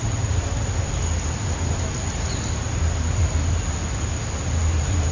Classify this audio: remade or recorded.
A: recorded